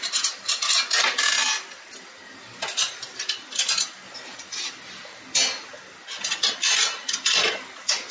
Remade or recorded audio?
recorded